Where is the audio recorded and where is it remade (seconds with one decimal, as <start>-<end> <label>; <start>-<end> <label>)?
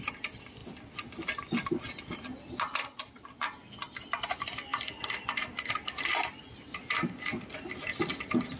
0.0-8.6 recorded